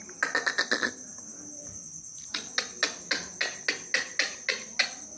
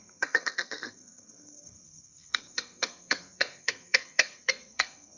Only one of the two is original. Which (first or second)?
first